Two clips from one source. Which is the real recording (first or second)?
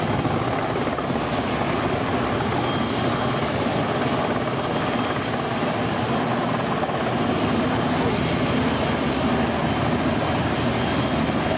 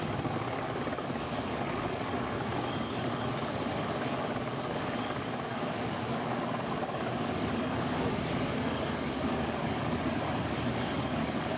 first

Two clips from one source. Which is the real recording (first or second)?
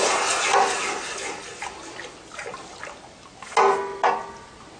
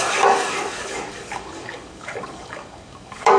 first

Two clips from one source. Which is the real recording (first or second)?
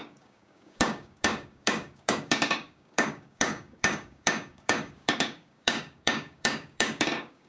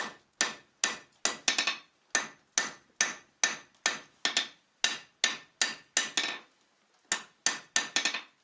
second